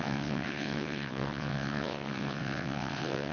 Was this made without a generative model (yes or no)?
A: no